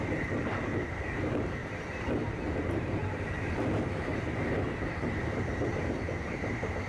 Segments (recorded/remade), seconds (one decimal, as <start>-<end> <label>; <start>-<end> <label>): 0.0-1.6 remade; 1.6-2.6 recorded; 2.6-4.1 remade; 4.1-5.4 recorded; 5.4-6.9 remade